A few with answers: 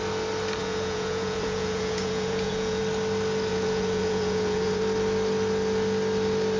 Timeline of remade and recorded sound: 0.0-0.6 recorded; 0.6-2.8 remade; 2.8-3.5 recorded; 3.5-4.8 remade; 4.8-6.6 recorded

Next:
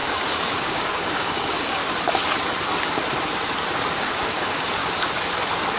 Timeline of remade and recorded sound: 0.0-1.8 remade; 1.8-4.0 recorded; 4.0-4.8 remade; 4.8-5.8 recorded

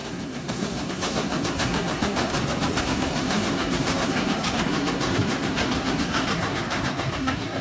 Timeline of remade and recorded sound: 0.0-2.3 remade; 2.3-2.8 recorded; 2.8-7.6 remade

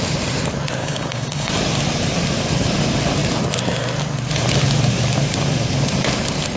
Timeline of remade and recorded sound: 0.0-0.8 recorded; 0.8-1.5 remade; 1.5-6.6 recorded

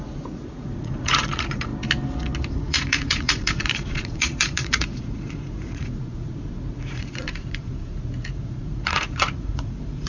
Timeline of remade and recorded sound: 0.0-1.7 remade; 1.7-2.5 recorded; 2.5-10.1 remade

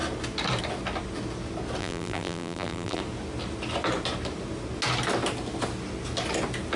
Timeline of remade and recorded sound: 0.0-1.8 recorded; 1.8-3.0 remade; 3.0-6.8 recorded

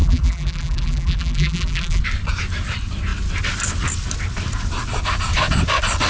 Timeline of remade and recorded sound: 0.0-2.0 remade; 2.0-6.1 recorded

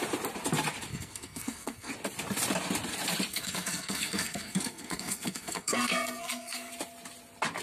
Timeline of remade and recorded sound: 0.0-0.9 recorded; 0.9-1.9 remade; 1.9-3.3 recorded; 3.3-6.7 remade; 6.7-7.6 recorded